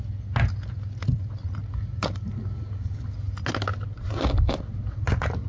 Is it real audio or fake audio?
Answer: real